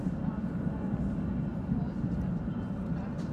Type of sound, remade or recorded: recorded